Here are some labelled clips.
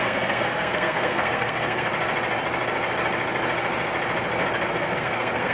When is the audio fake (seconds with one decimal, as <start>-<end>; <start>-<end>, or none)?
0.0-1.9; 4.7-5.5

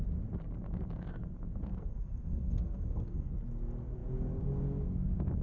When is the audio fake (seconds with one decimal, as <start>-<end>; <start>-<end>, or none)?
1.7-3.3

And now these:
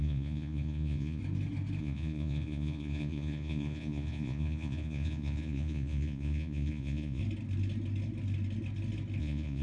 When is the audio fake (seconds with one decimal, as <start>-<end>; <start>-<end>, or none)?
0.0-1.2; 1.8-7.2; 9.2-9.6

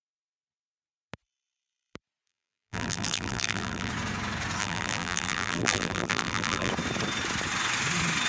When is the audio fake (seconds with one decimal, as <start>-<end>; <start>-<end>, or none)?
2.3-3.9; 4.6-6.7

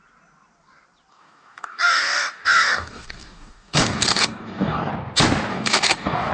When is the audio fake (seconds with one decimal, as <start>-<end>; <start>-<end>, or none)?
1.1-4.9; 5.5-6.3

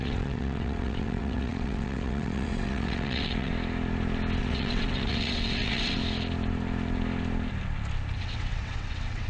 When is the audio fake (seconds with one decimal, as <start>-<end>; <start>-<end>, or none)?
0.0-3.5; 4.4-6.0; 8.2-9.3

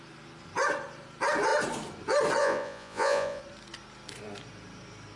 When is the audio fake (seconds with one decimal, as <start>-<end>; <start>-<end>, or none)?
2.4-3.4